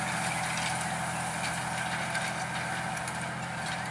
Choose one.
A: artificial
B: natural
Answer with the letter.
B